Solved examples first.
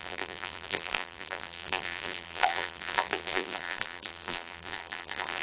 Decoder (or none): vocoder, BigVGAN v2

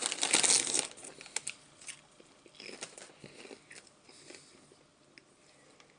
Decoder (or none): none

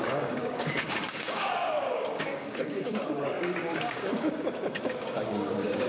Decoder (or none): codec, DAC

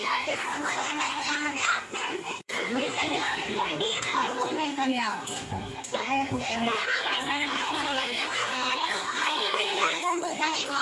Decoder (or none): codec, SNAC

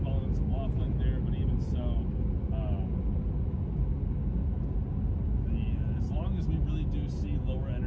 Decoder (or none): none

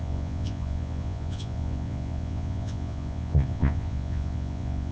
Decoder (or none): vocoder, Vocos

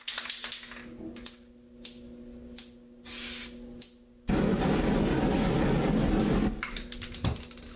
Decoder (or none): none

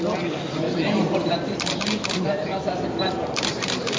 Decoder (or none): vocoder, BigVGAN v2